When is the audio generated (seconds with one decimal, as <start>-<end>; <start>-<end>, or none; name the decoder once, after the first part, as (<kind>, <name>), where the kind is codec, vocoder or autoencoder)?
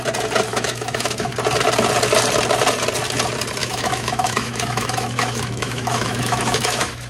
0.5-1.3 (autoencoder, DAC-VAE); 3.6-7.1